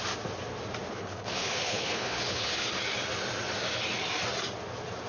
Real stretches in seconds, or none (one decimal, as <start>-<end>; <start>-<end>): 0.0-0.9; 2.7-5.1